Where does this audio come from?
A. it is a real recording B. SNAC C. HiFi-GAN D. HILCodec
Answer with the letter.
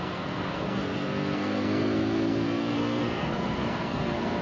B